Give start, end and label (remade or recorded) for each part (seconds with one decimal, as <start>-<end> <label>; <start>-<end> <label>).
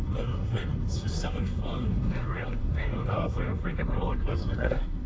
0.0-5.1 remade